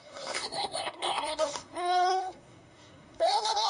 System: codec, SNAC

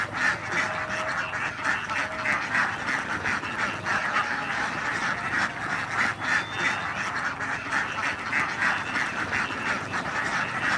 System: none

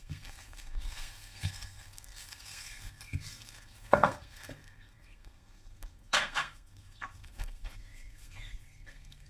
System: codec, SNAC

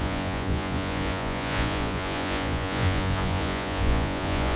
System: vocoder, Vocos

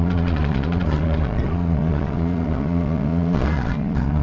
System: vocoder, Vocos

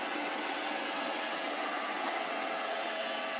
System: vocoder, WaveNeXt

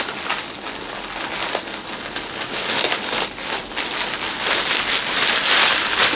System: none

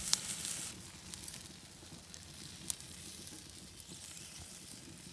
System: none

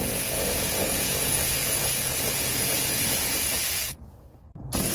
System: vocoder, Vocos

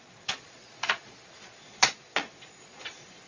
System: vocoder, Vocos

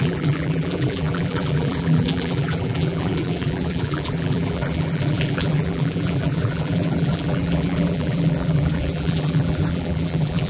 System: vocoder, BigVGAN v2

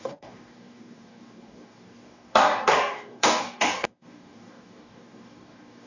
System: codec, DAC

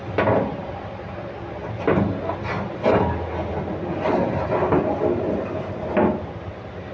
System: none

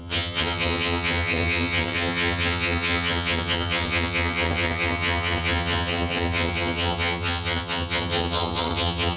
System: vocoder, HiFi-GAN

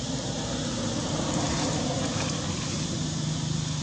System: none